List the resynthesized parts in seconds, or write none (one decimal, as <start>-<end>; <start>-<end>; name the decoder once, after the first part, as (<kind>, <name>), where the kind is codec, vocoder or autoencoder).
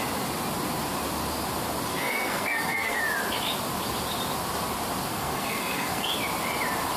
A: 1.9-3.0 (codec, SNAC); 5.1-6.1